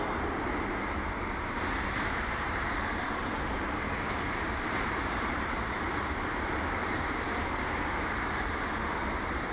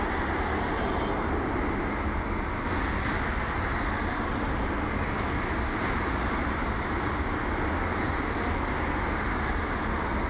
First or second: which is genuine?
second